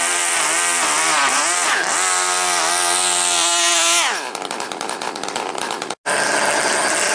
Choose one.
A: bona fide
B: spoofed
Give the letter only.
A